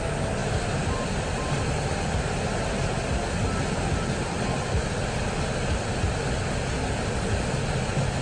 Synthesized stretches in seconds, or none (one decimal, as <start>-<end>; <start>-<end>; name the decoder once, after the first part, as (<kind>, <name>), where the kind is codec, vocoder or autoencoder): 0.4-2.1 (vocoder, BigVGAN v2)